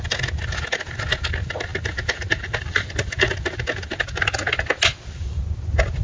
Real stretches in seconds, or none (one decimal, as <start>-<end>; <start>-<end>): 0.0-6.0